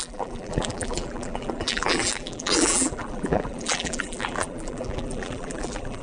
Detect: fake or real fake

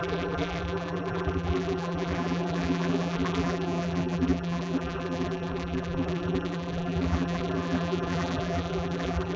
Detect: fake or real fake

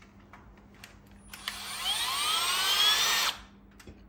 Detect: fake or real real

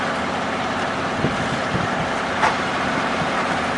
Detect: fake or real fake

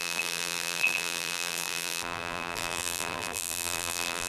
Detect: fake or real fake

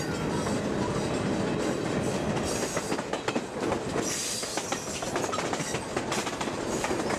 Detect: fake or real real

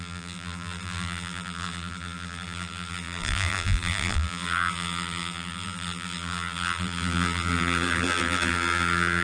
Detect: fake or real fake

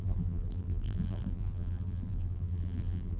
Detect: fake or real fake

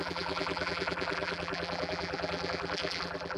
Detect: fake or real fake